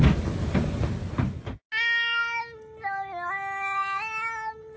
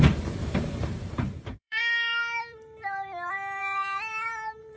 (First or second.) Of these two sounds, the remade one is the second